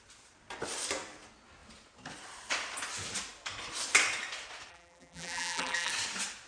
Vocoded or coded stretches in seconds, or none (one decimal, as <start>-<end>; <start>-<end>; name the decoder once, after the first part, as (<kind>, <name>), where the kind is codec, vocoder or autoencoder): 4.7-5.9 (vocoder, BigVGAN v2)